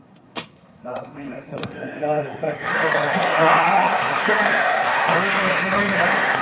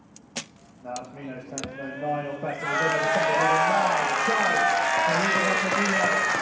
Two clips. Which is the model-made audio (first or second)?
first